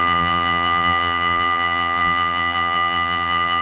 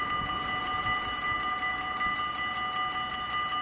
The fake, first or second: first